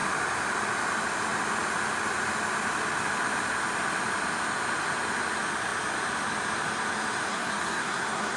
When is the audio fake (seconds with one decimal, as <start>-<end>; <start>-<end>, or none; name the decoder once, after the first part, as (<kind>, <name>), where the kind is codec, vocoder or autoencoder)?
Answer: 7.3-8.4 (codec, SNAC)